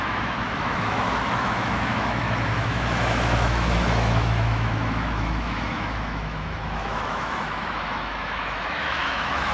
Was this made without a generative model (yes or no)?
no